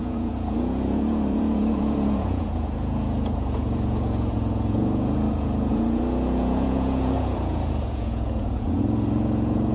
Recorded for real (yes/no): no